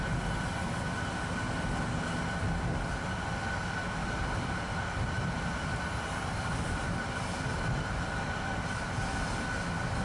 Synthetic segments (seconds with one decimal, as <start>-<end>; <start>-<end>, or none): 4.0-9.1

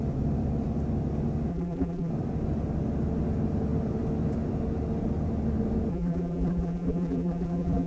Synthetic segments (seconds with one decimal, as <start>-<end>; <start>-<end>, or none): 1.5-2.1; 5.9-7.9